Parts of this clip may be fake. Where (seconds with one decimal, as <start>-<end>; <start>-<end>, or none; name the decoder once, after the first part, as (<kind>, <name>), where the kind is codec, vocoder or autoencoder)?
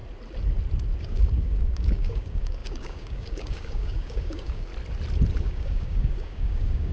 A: 1.0-4.7 (codec, DAC); 5.4-6.9